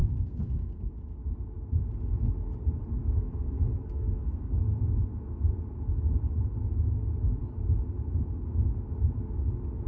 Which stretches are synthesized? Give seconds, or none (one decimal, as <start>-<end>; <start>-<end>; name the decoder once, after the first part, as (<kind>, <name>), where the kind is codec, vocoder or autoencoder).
0.0-0.9 (codec, SNAC); 3.0-4.5